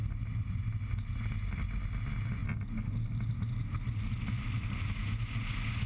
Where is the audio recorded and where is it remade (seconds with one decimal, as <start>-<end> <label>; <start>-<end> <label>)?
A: 0.0-5.9 recorded

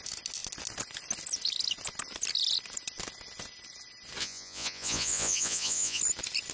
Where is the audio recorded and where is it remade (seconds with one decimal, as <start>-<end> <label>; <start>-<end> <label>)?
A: 0.0-4.2 recorded; 4.2-6.0 remade; 6.0-6.5 recorded

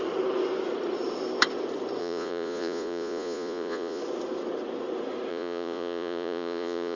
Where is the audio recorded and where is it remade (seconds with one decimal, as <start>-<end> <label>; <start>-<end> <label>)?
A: 0.0-2.0 recorded; 2.0-4.0 remade; 4.0-5.3 recorded; 5.3-7.0 remade